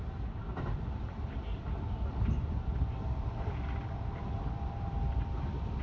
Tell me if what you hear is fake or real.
fake